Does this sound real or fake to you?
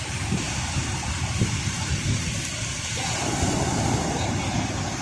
real